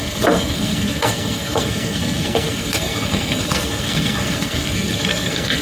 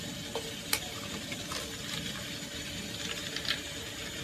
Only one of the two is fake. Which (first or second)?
first